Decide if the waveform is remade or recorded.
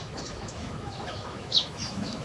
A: remade